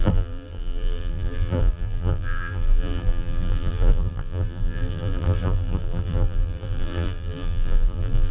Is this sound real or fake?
fake